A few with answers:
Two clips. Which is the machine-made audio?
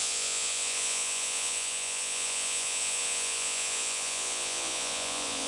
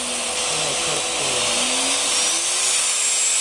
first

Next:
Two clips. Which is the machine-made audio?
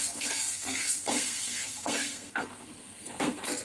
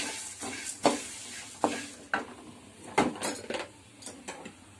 first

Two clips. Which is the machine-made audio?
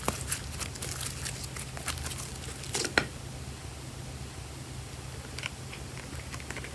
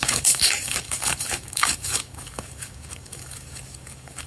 second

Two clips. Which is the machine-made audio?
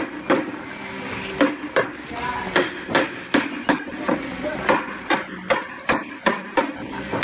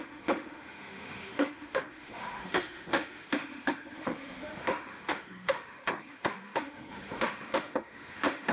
second